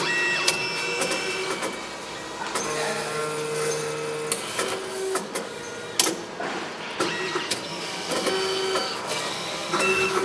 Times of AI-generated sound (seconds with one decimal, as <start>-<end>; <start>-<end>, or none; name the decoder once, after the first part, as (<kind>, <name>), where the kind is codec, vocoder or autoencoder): 4.9-5.6 (codec, DAC); 7.7-8.3; 8.8-10.2